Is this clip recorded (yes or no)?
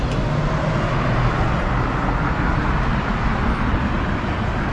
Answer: yes